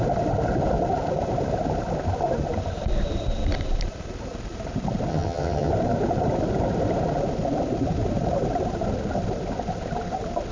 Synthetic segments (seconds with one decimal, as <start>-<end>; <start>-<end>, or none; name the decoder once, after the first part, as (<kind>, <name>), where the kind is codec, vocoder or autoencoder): 5.1-5.7 (vocoder, HiFi-GAN)